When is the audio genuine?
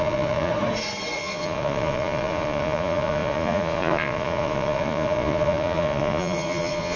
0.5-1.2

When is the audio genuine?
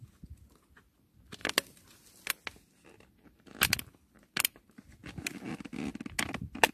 0.0-6.7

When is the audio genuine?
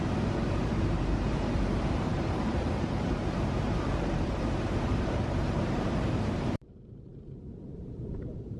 none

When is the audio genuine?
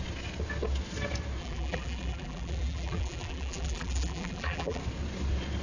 0.0-1.4; 4.8-5.6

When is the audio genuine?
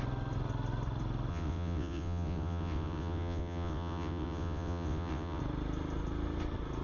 0.0-1.3; 5.4-6.8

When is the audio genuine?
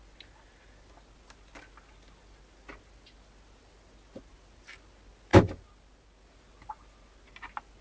0.0-7.8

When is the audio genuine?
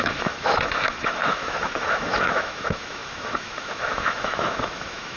none